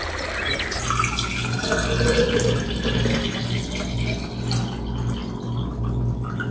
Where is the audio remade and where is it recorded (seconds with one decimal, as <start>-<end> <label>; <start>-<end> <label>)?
0.0-6.5 recorded